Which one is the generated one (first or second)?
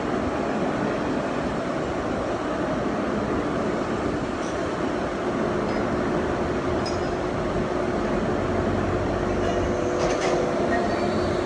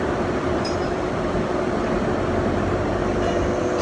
second